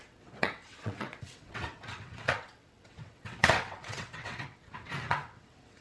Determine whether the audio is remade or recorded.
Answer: remade